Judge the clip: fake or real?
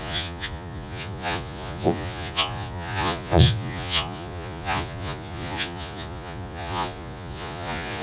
fake